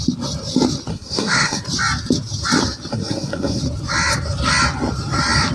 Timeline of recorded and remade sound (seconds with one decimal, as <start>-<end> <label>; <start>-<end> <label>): 0.0-0.9 recorded; 0.9-1.6 remade; 1.6-2.9 recorded; 2.9-3.6 remade; 3.6-5.5 recorded